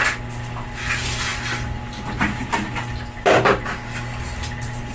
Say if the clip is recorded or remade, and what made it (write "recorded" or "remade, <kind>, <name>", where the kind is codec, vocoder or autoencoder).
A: recorded